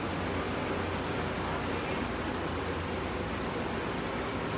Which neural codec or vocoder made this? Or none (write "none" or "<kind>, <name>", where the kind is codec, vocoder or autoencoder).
none